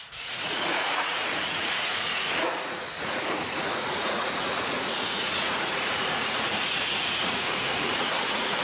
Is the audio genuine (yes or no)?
no